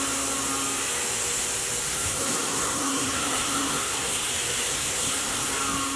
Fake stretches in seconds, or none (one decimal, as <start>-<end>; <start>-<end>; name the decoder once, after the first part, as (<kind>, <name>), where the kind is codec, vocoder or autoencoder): 1.8-4.3 (codec, SNAC); 4.7-5.5